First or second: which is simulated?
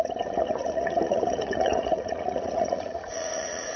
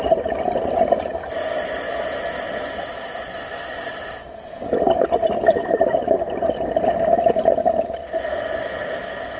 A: first